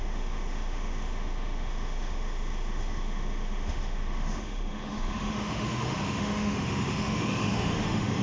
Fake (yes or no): yes